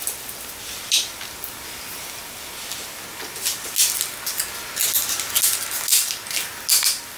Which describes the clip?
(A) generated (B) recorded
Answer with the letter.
B